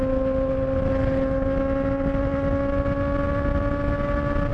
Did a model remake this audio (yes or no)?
no